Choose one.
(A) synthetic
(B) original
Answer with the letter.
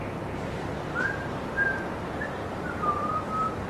A